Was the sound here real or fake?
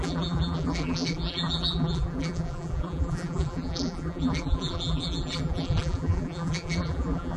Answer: fake